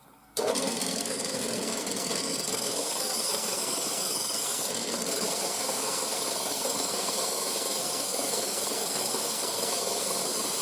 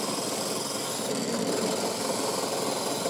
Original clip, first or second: second